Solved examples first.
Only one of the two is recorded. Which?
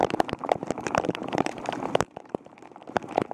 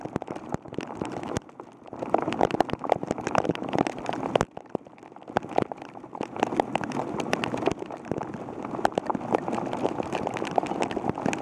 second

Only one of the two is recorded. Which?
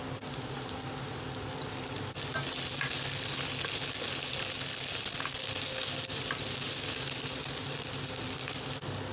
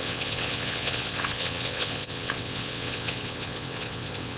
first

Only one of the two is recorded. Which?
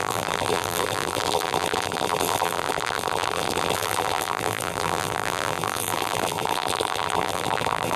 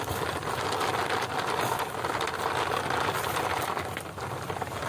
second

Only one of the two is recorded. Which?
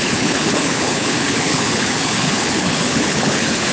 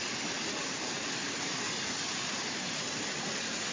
second